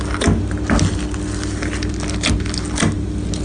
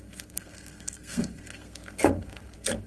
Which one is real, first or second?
first